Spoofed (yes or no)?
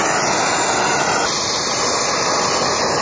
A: no